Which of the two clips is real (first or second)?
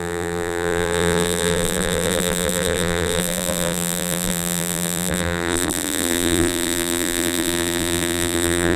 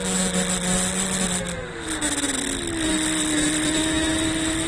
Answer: second